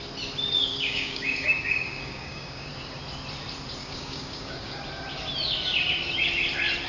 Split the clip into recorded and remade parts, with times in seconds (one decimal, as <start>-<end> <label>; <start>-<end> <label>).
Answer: 0.0-0.7 recorded; 0.7-2.7 remade; 2.7-3.8 recorded; 3.8-4.8 remade; 4.8-6.9 recorded